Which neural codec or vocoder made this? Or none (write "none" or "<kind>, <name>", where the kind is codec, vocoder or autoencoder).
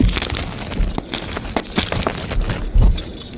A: none